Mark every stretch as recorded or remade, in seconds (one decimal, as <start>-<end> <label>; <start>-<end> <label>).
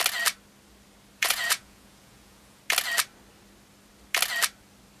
0.0-1.2 recorded; 1.2-2.6 remade; 2.6-5.0 recorded